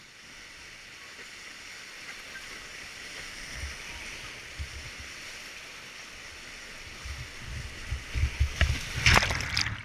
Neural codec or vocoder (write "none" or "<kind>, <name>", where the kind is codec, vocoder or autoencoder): none